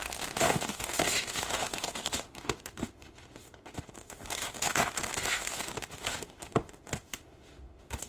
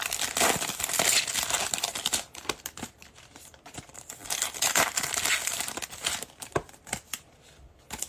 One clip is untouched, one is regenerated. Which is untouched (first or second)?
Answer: second